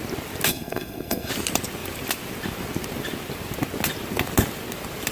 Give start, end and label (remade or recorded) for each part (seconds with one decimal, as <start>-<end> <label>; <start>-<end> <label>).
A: 0.0-0.5 recorded; 0.5-1.3 remade; 1.3-5.1 recorded